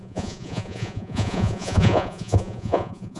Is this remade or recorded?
remade